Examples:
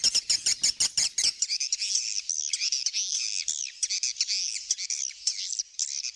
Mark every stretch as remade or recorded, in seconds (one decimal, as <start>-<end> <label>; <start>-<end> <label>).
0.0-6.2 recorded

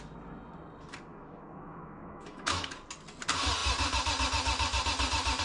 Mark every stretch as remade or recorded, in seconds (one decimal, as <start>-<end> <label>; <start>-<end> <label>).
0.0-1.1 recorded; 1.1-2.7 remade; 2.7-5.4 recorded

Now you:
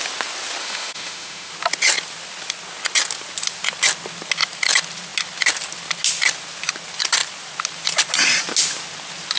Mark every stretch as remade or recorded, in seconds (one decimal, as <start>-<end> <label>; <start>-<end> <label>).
0.0-0.6 recorded; 0.6-1.5 remade; 1.5-9.4 recorded